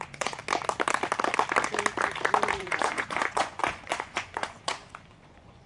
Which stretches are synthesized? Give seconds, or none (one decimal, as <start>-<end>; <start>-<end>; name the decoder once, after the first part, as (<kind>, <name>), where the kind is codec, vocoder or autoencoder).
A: 0.0-0.4 (vocoder, Vocos); 2.6-5.7